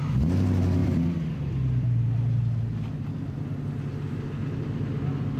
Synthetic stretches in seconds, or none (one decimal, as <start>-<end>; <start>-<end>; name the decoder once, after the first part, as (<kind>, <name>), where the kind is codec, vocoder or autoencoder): 0.8-3.4 (vocoder, BigVGAN v2)